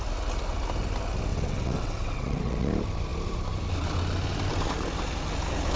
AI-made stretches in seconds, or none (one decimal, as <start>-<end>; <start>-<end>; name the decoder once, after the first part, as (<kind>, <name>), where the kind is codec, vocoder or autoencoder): 1.3-2.7 (vocoder, WaveNeXt)